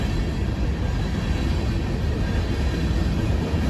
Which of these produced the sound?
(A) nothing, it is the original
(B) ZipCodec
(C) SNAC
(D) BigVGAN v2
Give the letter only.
A